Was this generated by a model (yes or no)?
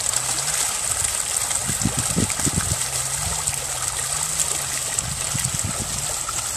no